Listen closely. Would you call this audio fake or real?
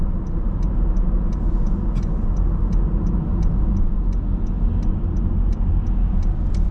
real